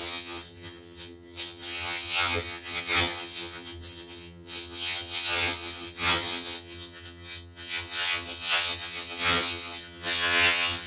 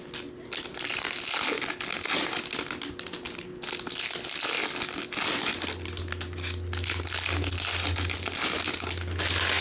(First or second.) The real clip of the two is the second